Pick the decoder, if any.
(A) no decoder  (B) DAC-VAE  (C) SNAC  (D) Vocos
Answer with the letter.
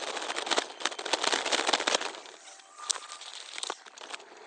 A